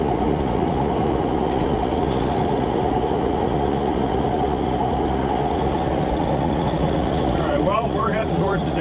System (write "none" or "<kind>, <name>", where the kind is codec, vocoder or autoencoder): vocoder, Vocos